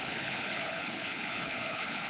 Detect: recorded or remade remade